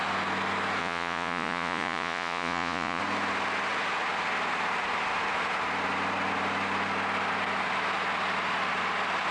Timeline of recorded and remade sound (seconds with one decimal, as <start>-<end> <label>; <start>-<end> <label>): 0.0-0.8 recorded; 0.8-3.0 remade; 3.0-9.3 recorded

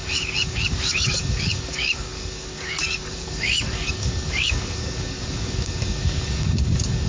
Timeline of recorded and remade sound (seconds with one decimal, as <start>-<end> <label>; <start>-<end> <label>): 0.0-7.1 remade